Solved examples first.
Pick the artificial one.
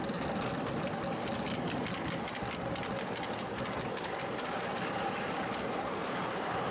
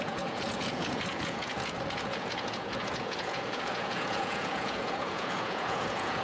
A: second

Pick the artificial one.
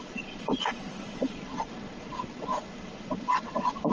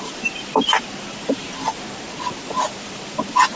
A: first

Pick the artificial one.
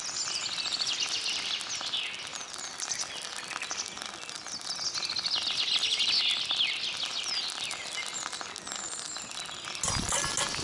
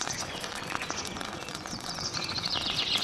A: second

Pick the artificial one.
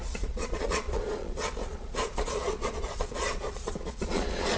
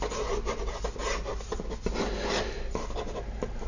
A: first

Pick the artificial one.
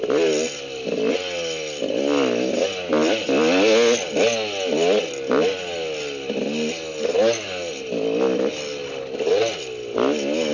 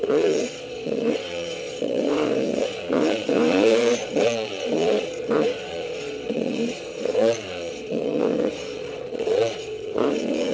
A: second